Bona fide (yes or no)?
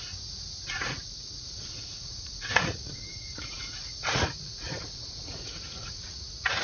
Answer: no